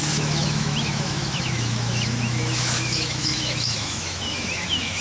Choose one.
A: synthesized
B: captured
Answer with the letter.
A